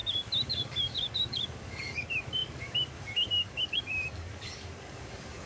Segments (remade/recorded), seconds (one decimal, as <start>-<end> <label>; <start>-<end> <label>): 0.0-5.5 remade